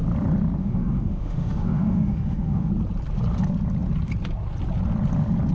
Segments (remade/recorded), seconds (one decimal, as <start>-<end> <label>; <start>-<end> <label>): 0.0-0.6 recorded; 0.6-2.7 remade; 2.7-5.5 recorded